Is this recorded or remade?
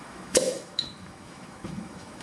remade